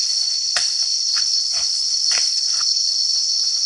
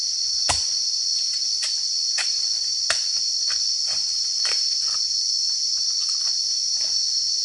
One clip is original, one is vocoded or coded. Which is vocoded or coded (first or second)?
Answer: first